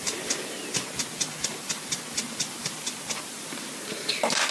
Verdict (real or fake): real